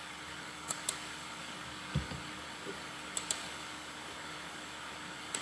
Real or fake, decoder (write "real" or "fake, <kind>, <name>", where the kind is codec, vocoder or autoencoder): fake, codec, DAC